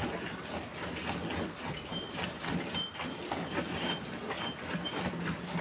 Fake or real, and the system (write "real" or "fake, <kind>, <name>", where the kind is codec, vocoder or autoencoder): real